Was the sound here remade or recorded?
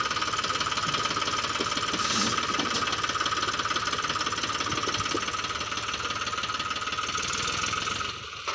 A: recorded